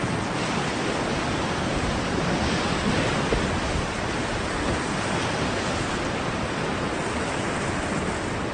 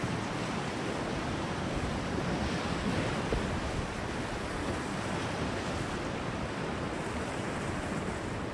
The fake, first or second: second